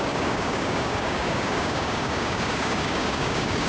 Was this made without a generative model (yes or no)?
no